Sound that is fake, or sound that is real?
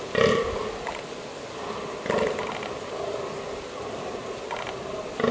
real